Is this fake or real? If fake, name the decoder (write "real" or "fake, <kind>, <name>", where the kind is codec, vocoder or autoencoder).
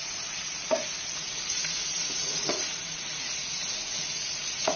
fake, vocoder, Vocos